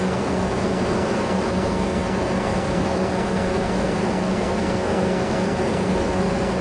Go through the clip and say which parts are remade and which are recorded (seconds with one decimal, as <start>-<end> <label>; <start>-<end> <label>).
0.0-6.6 remade

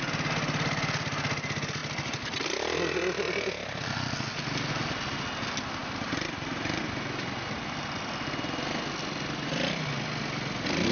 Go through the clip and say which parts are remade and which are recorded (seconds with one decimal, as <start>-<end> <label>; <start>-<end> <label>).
0.0-5.8 recorded; 5.8-6.8 remade; 6.8-10.9 recorded

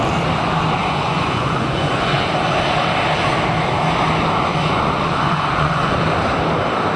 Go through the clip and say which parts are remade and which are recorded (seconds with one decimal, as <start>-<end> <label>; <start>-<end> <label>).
0.0-0.8 recorded; 0.8-2.3 remade; 2.3-4.5 recorded; 4.5-6.0 remade; 6.0-7.0 recorded

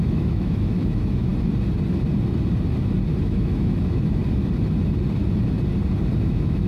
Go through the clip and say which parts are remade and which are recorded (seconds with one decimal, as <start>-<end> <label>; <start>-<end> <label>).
0.0-1.3 remade; 1.3-3.2 recorded; 3.2-4.2 remade; 4.2-6.2 recorded; 6.2-6.7 remade

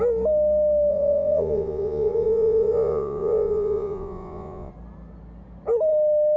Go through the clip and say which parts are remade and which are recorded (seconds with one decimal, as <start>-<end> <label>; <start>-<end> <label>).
0.0-0.9 recorded; 0.9-4.7 remade; 4.7-6.4 recorded

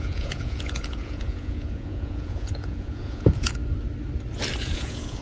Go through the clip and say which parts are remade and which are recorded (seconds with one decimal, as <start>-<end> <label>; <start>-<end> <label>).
0.0-3.6 remade; 3.6-4.6 recorded; 4.6-5.2 remade